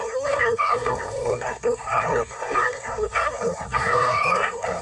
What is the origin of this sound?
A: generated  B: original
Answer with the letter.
A